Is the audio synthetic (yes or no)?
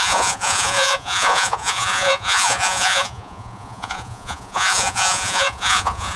yes